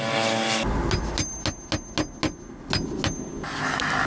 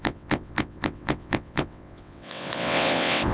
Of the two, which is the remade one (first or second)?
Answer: second